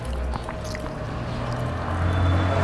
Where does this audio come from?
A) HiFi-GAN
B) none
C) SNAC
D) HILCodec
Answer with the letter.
B